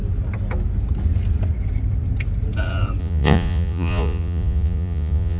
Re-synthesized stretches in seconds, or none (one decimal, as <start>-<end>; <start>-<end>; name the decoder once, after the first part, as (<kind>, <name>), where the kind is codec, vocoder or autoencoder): 3.0-5.4 (vocoder, Vocos)